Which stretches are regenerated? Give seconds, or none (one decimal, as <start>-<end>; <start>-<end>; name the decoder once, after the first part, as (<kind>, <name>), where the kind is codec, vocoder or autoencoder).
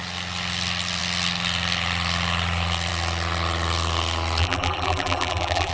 4.4-5.7 (vocoder, BigVGAN v2)